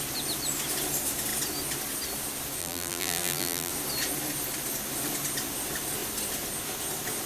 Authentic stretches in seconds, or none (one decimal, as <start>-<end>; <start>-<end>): 0.0-2.6; 3.7-7.3